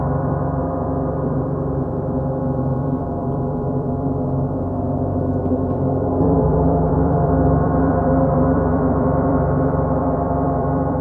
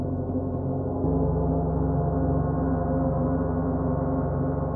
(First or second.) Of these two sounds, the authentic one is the second